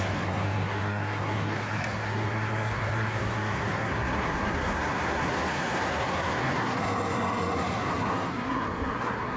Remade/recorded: remade